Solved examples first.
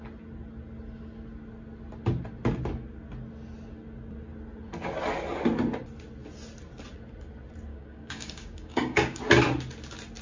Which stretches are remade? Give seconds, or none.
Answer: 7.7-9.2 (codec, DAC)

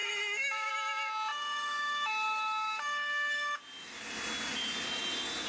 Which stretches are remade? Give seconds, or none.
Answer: 0.0-0.7 (autoencoder, DAC-VAE); 1.3-3.6